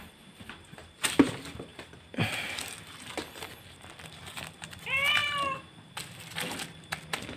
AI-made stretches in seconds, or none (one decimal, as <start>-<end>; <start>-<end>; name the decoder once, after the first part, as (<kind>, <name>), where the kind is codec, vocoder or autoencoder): none

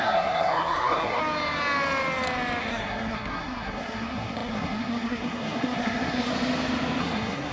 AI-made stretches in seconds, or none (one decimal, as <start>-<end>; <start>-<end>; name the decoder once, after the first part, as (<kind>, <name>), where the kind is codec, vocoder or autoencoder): 0.0-1.2 (codec, SNAC); 2.6-6.3; 7.0-7.5

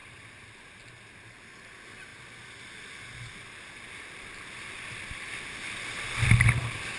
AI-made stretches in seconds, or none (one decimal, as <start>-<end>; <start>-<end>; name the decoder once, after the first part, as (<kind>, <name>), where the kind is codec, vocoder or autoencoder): none

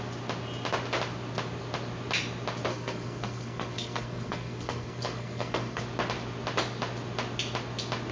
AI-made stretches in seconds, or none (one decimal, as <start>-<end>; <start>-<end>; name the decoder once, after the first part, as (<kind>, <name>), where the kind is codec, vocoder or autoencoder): 2.7-5.8 (codec, SNAC)

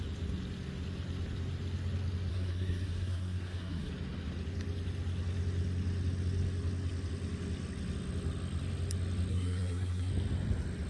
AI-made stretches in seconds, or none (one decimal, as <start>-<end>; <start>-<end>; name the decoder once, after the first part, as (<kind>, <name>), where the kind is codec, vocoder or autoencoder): 2.3-3.9 (codec, SNAC); 9.3-10.1

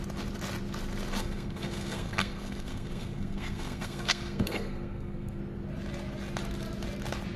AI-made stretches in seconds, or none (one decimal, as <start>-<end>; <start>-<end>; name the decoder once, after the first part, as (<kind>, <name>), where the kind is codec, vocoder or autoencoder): 1.2-5.4 (codec, SNAC)

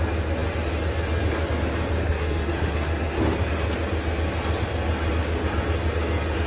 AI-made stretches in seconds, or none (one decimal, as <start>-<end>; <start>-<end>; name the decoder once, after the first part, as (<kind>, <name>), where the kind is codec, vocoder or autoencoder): 2.0-3.2 (codec, SNAC)

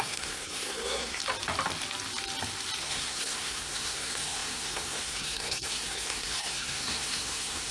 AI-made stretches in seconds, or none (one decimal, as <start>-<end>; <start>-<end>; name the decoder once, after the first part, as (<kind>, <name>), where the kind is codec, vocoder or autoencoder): 0.0-1.2 (codec, SNAC); 2.8-7.7